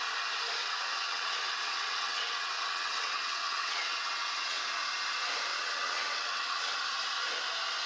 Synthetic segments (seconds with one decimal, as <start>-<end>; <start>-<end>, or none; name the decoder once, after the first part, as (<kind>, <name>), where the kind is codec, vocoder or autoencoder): 0.6-4.6 (vocoder, WaveNeXt); 5.5-6.7